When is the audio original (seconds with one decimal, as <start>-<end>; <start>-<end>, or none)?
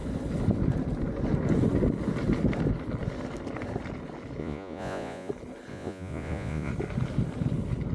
0.0-4.4; 5.3-5.7; 6.7-7.9